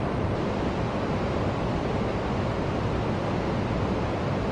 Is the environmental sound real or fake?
real